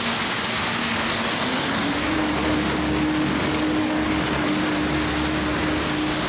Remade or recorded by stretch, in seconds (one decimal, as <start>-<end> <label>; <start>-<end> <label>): 0.0-0.8 recorded; 0.8-4.6 remade; 4.6-6.3 recorded